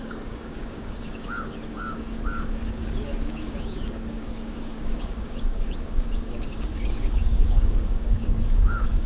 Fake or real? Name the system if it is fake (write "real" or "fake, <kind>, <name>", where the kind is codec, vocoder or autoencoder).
fake, codec, DAC